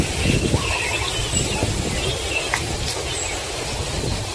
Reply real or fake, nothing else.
real